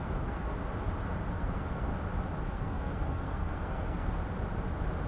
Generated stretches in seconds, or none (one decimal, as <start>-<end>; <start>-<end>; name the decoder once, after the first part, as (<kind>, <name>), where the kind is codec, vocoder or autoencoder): 0.0-0.5 (codec, SNAC); 1.3-1.9; 2.4-4.2